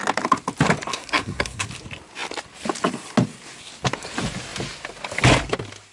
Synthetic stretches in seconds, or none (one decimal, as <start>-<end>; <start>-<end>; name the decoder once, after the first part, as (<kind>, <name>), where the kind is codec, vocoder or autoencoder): 0.9-1.7 (codec, SNAC)